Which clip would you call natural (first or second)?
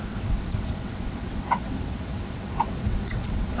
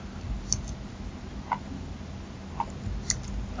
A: second